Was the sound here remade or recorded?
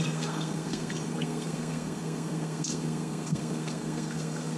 remade